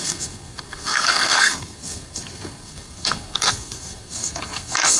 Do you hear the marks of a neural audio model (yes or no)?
yes